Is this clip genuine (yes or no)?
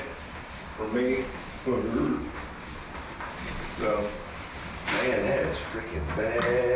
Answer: yes